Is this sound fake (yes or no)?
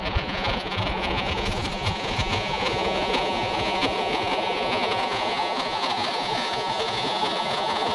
yes